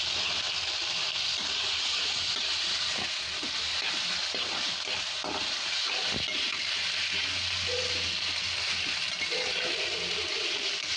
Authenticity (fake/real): real